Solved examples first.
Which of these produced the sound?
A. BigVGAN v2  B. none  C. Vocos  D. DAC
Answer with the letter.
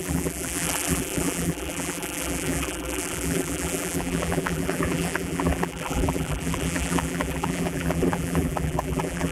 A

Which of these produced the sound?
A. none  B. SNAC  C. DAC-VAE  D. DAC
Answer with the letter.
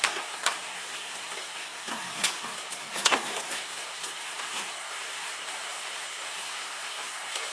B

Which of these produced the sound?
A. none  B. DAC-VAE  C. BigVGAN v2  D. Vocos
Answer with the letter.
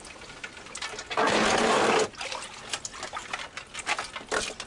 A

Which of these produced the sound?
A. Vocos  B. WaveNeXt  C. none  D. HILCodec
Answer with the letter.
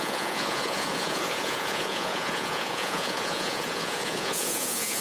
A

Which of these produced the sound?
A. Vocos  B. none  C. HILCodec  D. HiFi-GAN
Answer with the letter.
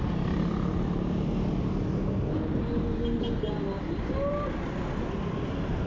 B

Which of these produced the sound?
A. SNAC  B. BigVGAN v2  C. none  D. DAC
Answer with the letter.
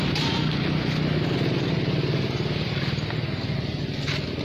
C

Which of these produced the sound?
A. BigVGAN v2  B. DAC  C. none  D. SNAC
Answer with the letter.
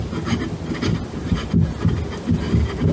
C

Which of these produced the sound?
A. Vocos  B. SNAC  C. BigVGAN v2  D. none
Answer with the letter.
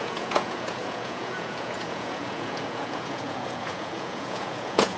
A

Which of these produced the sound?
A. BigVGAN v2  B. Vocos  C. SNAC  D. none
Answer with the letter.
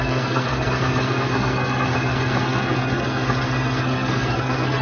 C